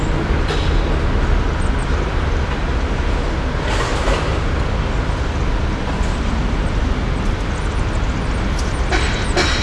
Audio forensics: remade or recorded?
recorded